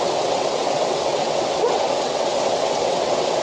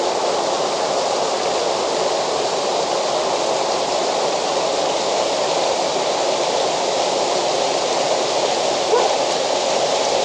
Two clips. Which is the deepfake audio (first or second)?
first